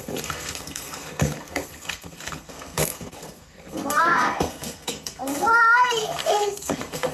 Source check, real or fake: fake